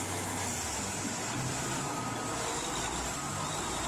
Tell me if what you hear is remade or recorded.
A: recorded